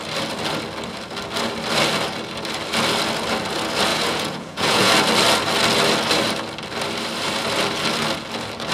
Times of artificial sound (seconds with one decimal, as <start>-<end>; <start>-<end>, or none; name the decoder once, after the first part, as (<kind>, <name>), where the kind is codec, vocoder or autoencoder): 3.9-4.9 (vocoder, Vocos)